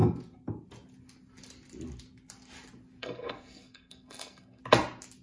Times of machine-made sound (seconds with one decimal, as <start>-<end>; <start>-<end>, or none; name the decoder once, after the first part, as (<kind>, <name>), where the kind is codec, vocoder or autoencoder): 3.0-4.6 (codec, SNAC)